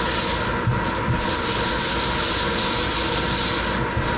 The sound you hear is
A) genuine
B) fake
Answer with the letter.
A